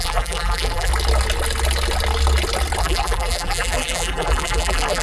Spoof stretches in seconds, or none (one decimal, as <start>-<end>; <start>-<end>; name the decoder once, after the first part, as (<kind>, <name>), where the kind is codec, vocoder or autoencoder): 0.0-0.9 (vocoder, BigVGAN v2); 2.8-5.0